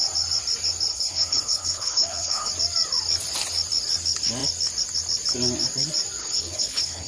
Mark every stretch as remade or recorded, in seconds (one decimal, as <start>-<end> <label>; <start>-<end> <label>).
0.0-0.9 recorded; 0.9-2.5 remade; 2.5-6.2 recorded; 6.2-7.1 remade